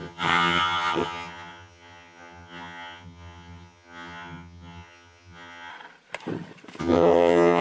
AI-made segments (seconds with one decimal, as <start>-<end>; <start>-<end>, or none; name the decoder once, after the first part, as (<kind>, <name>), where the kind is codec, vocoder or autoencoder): 0.0-5.7 (vocoder, HiFi-GAN); 6.8-7.6